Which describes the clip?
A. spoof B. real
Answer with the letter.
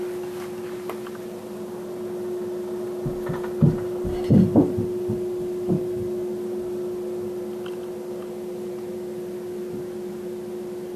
B